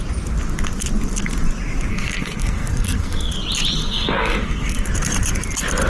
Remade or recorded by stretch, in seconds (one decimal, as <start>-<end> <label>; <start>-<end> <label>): 0.0-1.9 recorded; 1.9-3.3 remade; 3.3-3.8 recorded; 3.8-4.9 remade; 4.9-5.9 recorded